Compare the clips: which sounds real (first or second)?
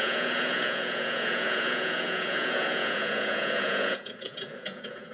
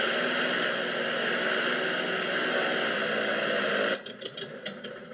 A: second